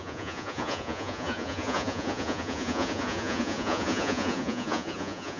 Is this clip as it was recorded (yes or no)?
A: no